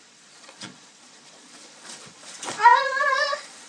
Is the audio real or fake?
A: fake